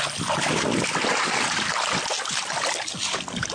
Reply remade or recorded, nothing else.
recorded